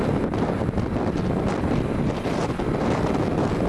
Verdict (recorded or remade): recorded